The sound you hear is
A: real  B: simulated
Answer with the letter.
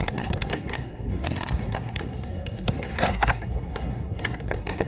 B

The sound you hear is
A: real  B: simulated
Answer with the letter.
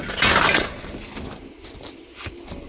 A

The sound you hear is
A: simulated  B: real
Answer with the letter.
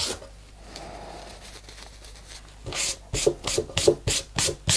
B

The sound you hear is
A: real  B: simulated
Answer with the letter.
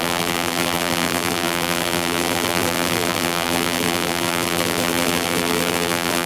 B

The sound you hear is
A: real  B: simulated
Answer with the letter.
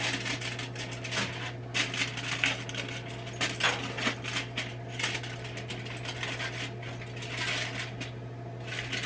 A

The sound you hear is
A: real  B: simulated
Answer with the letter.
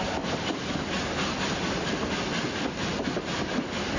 A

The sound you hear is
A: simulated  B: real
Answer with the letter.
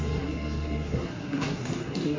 A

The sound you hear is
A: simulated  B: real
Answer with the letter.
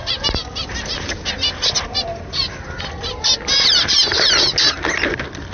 B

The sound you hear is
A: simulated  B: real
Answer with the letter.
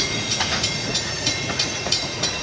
A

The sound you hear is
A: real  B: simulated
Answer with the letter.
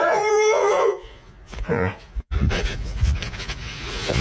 B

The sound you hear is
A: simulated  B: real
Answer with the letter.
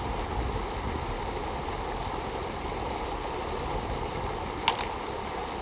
B